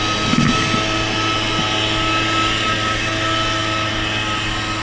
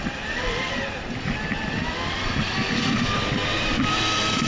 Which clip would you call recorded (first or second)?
first